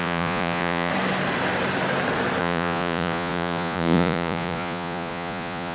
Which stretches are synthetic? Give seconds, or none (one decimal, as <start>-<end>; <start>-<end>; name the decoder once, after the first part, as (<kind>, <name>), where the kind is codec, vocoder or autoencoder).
0.0-0.9 (vocoder, Vocos); 2.4-5.7